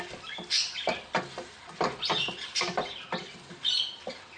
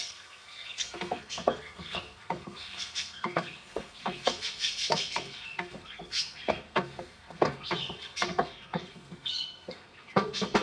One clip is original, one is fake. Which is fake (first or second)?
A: second